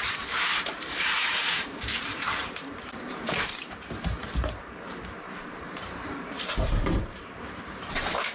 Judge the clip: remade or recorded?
remade